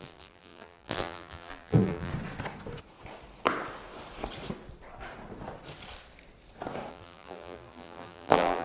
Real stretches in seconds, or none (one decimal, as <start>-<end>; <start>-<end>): 2.1-6.9

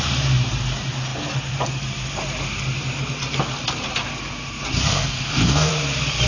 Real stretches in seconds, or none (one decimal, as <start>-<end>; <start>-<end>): 0.0-4.9; 5.7-6.3